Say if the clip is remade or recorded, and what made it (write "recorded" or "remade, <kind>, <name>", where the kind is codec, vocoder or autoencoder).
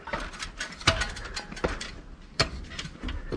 recorded